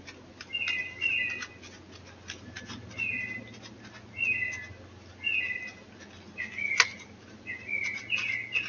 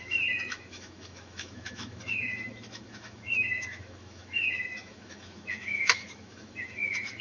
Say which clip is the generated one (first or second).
second